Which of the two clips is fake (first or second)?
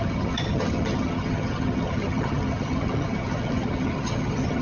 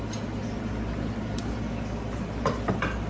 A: first